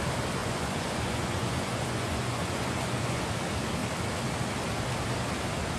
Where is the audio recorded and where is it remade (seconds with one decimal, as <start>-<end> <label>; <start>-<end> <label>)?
0.0-0.4 recorded; 0.4-3.3 remade; 3.3-5.8 recorded